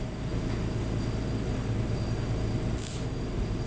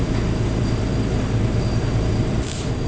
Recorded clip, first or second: first